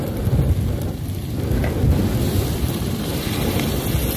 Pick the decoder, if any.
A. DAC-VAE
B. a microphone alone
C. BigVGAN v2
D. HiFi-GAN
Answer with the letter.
B